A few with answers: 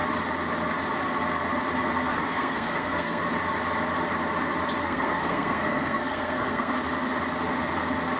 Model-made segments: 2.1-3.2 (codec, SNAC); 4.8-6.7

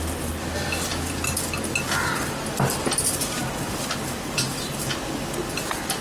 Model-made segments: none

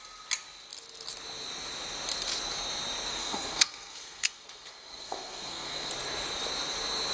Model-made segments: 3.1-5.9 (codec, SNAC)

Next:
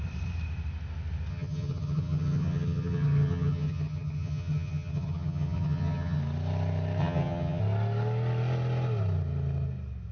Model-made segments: 1.3-6.2 (vocoder, HiFi-GAN); 7.0-7.6

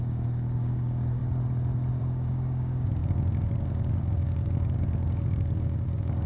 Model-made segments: 0.0-1.2 (codec, DAC); 2.0-6.3

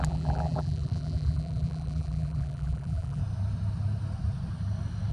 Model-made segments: 0.0-3.2 (vocoder, BigVGAN v2)